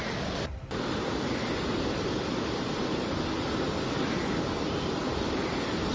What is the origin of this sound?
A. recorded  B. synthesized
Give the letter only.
A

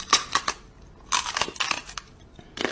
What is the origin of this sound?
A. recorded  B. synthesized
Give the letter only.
A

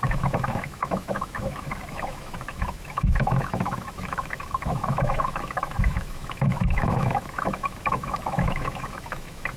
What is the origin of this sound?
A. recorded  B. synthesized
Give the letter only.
B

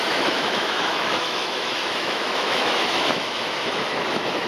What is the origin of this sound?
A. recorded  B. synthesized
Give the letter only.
B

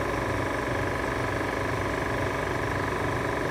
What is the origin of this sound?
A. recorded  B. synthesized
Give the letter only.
A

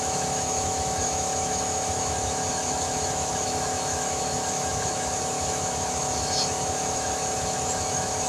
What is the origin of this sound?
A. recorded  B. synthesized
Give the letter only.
B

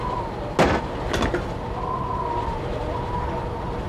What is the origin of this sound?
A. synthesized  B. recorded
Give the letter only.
B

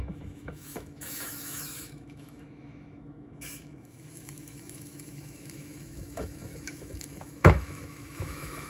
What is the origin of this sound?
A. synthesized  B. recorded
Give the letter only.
A